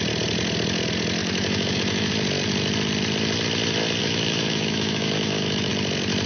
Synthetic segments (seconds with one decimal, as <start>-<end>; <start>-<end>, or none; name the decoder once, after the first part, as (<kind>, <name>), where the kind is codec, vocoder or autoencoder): 1.2-2.1 (autoencoder, DAC-VAE); 4.0-5.7